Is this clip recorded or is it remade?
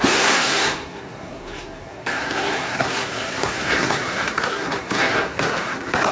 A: remade